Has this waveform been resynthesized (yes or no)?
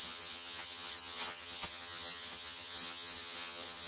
yes